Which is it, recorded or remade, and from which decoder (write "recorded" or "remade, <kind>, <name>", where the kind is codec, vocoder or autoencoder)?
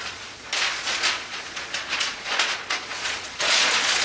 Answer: remade, vocoder, Vocos